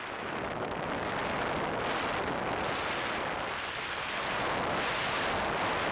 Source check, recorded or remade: recorded